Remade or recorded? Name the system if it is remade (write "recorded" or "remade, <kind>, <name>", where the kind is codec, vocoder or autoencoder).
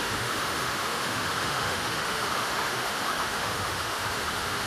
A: remade, autoencoder, DAC-VAE